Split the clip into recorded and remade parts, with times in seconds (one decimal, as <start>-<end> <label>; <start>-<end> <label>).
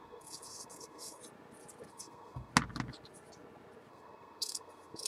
0.0-1.2 remade; 1.2-1.9 recorded; 1.9-2.5 remade; 2.5-3.9 recorded; 3.9-5.1 remade